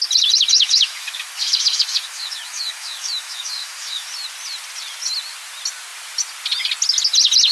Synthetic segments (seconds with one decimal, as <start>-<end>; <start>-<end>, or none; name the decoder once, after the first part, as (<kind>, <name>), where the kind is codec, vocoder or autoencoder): 0.5-4.1 (autoencoder, DAC-VAE)